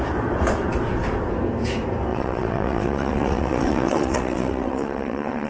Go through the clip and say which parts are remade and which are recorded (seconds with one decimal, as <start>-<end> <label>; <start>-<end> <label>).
0.0-2.1 recorded; 2.1-5.5 remade